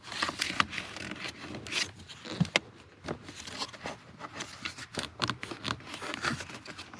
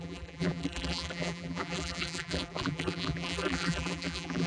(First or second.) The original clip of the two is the first